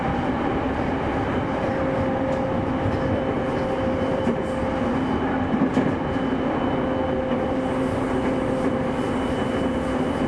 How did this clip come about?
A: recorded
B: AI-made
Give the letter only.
A